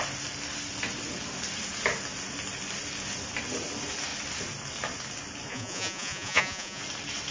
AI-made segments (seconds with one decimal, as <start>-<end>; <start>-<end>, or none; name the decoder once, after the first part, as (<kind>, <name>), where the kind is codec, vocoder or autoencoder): 5.5-6.8 (vocoder, Vocos)